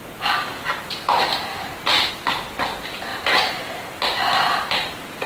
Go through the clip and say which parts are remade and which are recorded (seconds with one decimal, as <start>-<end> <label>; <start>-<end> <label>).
0.0-1.5 recorded; 1.5-2.1 remade; 2.1-3.1 recorded; 3.1-3.7 remade; 3.7-5.3 recorded